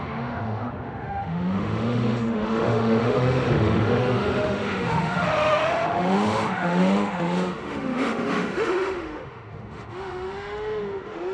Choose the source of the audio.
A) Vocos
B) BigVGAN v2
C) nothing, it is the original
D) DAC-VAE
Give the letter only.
D